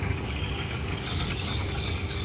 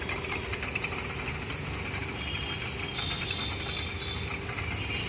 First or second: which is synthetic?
first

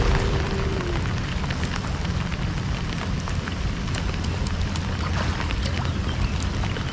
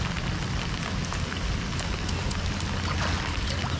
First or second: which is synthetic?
first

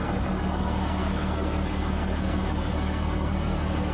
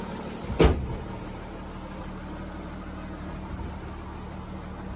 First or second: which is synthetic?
first